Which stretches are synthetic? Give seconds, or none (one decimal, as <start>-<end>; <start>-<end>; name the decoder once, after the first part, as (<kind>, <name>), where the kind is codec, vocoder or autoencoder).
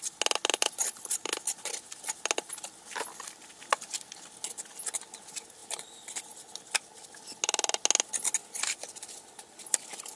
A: none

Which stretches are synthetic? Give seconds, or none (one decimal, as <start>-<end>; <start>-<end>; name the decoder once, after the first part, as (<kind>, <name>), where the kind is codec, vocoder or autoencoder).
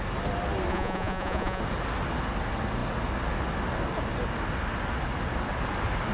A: 0.7-1.6 (vocoder, Vocos)